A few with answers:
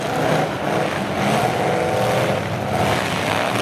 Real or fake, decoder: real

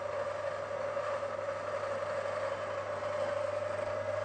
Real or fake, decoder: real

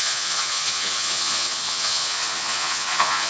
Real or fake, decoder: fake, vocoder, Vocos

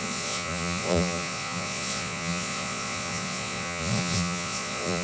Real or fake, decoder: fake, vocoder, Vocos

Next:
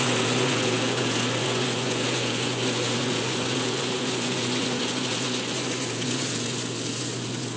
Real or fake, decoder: fake, vocoder, Vocos